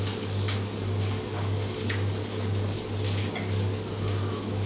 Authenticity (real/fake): fake